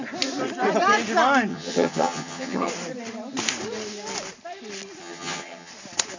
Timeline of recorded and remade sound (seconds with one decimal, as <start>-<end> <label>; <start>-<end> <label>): 0.0-1.5 recorded; 1.5-2.7 remade; 2.7-5.0 recorded; 5.0-5.7 remade; 5.7-6.2 recorded